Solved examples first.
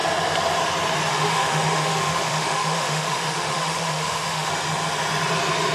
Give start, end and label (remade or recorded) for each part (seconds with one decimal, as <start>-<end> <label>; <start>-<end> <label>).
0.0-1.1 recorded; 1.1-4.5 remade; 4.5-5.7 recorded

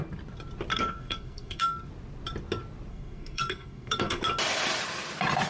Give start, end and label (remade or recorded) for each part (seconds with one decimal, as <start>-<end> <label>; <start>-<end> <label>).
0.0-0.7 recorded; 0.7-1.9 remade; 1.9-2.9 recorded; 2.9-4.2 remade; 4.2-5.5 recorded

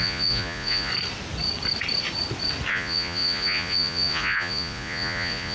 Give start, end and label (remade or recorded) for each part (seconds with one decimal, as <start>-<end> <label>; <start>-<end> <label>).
0.0-0.9 remade; 0.9-2.7 recorded; 2.7-5.5 remade